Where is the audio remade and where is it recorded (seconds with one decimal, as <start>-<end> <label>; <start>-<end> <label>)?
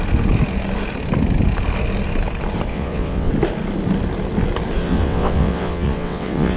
0.0-2.7 recorded; 2.7-3.3 remade; 3.3-4.8 recorded; 4.8-6.6 remade